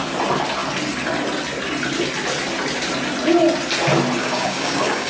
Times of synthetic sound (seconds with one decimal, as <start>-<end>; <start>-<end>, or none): 4.2-5.1

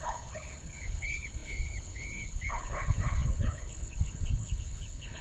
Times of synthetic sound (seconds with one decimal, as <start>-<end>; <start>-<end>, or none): 0.0-5.2